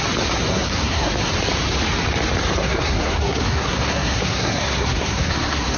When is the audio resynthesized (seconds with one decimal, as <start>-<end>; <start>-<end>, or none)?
0.5-1.1; 2.6-5.8